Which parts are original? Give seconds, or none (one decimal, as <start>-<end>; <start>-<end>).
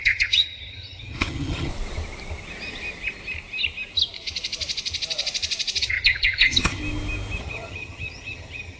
1.7-5.8; 6.8-7.4